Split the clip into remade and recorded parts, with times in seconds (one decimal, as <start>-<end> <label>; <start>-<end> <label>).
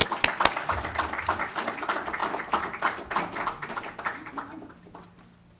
0.0-5.6 recorded